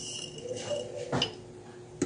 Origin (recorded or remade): recorded